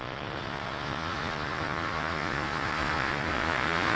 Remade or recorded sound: remade